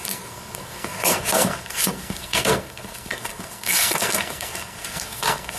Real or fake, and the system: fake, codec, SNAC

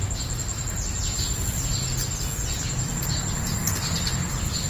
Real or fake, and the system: real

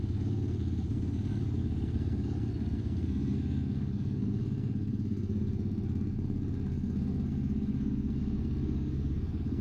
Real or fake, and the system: fake, codec, SNAC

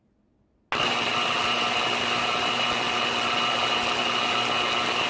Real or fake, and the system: real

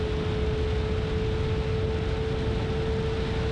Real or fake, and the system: real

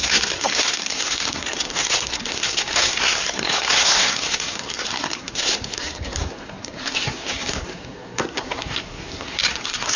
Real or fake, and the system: fake, codec, SNAC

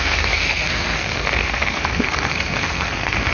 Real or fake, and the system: fake, codec, SNAC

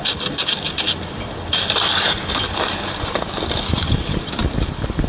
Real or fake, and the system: real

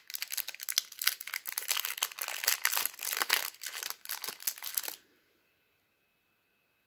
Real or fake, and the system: real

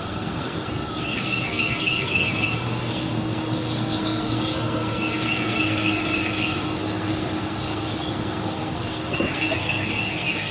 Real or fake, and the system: fake, codec, SNAC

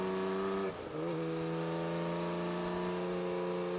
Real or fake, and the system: real